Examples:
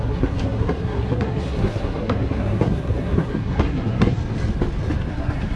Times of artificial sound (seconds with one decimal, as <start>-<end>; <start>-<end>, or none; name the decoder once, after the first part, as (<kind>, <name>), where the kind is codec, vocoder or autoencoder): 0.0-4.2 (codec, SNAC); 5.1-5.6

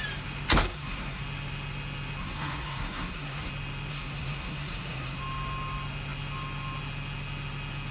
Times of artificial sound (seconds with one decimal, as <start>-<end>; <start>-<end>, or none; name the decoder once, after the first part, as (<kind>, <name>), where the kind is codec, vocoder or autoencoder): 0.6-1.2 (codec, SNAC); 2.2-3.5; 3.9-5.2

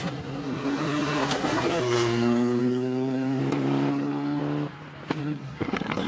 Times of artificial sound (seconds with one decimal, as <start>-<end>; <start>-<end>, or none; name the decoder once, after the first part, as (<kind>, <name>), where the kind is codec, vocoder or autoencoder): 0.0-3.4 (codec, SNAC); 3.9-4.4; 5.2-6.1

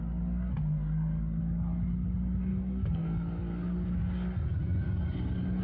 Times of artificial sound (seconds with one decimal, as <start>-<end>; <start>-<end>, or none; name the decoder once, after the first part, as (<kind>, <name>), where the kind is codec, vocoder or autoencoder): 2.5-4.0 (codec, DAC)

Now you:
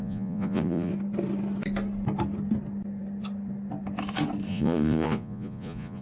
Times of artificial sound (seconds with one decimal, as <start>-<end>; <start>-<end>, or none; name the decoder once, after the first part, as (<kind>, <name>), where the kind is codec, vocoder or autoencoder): 0.0-0.9 (vocoder, Vocos); 4.5-6.0

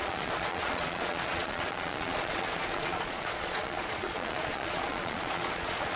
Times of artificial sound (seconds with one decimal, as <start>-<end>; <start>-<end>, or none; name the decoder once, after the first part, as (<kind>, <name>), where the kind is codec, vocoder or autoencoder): 0.0-6.0 (vocoder, Vocos)